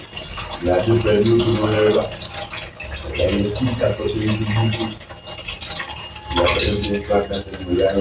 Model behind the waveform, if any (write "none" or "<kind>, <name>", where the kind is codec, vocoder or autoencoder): none